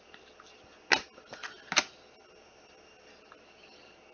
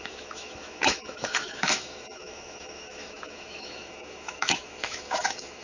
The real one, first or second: first